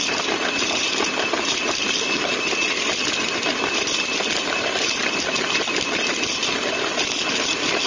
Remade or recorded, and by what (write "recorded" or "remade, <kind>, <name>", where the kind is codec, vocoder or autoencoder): recorded